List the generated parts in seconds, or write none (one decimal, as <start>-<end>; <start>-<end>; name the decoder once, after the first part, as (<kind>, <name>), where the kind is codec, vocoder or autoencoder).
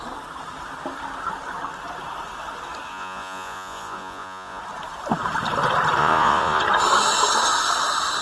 2.9-4.6 (vocoder, Vocos); 6.0-6.6